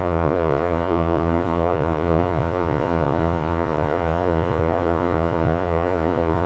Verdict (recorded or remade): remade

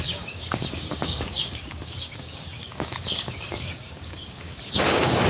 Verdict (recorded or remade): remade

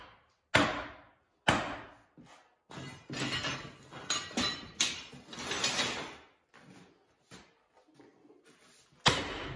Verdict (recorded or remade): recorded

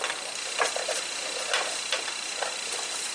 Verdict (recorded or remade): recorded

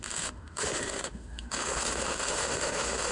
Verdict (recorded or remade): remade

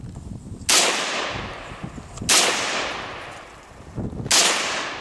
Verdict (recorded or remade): recorded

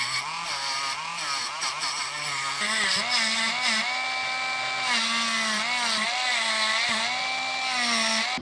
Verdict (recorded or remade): recorded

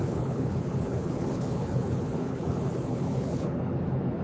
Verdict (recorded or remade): remade